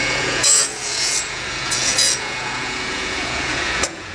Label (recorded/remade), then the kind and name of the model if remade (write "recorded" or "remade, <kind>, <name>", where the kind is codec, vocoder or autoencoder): remade, vocoder, Vocos